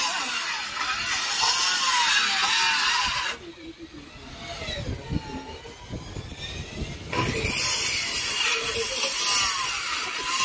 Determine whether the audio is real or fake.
real